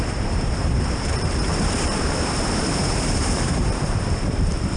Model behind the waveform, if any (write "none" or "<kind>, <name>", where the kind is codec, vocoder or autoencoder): vocoder, BigVGAN v2